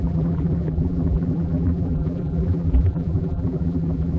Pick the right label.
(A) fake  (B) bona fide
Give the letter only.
A